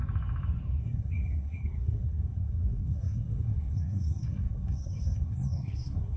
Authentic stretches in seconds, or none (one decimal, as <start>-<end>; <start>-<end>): 0.0-0.8